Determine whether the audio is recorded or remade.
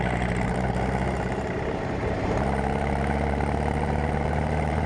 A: remade